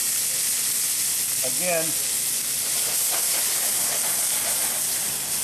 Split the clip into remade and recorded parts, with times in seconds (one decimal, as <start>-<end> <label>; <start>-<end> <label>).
0.0-5.4 recorded